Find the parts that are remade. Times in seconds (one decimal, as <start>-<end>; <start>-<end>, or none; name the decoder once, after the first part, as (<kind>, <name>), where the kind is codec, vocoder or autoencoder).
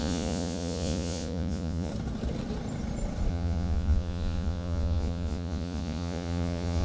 0.0-1.9 (vocoder, Vocos); 3.3-6.8